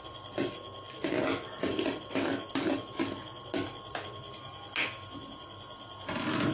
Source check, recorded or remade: recorded